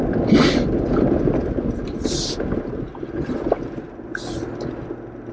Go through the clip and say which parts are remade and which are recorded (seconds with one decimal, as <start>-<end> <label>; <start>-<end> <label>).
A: 0.0-5.3 recorded